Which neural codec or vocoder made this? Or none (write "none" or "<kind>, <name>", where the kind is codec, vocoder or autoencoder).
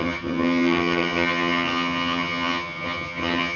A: vocoder, HiFi-GAN